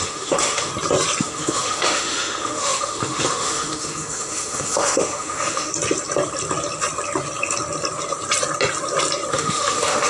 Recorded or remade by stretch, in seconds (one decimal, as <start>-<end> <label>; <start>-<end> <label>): 0.0-0.7 remade; 0.7-1.2 recorded; 1.2-5.7 remade; 5.7-9.3 recorded; 9.3-10.1 remade